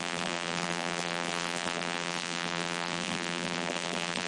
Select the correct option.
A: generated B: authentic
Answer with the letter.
A